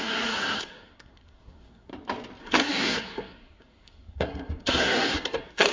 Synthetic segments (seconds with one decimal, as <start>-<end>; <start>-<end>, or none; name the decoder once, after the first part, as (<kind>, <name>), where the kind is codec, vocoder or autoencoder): 0.0-1.9 (codec, SNAC); 2.4-5.7